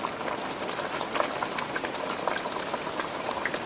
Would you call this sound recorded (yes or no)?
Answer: yes